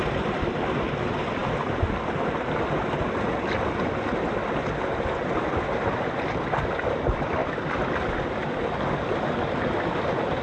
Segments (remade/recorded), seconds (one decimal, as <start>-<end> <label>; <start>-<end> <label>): 0.0-1.4 recorded; 1.4-2.5 remade; 2.5-7.4 recorded; 7.4-8.0 remade; 8.0-10.4 recorded